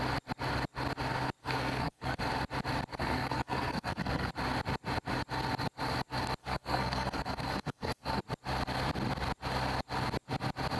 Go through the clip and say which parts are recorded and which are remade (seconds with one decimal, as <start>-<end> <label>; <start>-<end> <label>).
0.0-1.4 recorded; 1.4-2.2 remade; 2.2-2.9 recorded; 2.9-4.3 remade; 4.3-6.4 recorded; 6.4-8.2 remade; 8.2-10.8 recorded